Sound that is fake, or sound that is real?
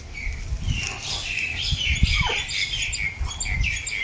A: real